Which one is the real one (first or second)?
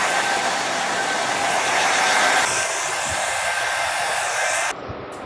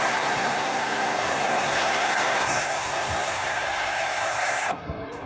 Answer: first